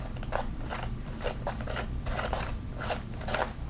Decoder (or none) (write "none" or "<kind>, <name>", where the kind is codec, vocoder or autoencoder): none